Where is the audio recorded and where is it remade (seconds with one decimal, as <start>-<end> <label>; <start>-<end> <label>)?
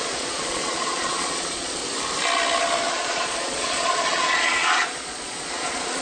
0.0-1.8 remade; 1.8-2.9 recorded; 2.9-6.0 remade